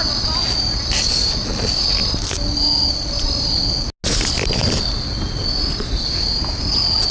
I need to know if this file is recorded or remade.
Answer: recorded